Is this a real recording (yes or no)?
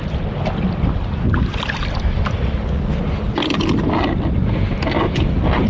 yes